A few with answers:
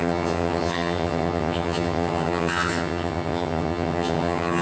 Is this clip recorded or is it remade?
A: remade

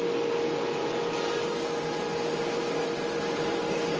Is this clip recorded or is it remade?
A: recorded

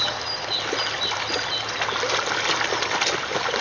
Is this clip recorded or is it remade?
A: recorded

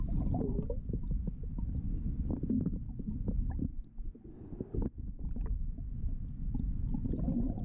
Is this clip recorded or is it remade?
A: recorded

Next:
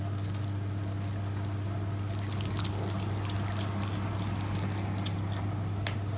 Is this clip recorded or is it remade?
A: recorded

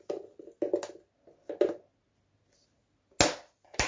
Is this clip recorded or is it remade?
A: recorded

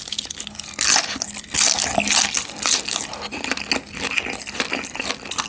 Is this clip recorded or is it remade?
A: recorded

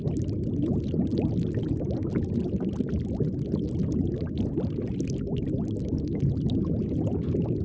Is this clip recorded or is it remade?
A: recorded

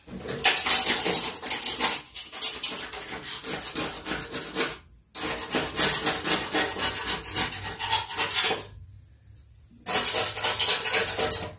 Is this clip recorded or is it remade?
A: recorded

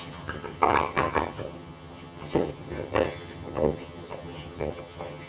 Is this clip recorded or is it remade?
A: remade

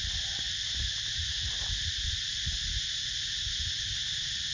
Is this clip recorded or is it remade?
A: recorded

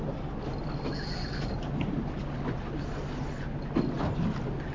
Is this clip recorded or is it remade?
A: recorded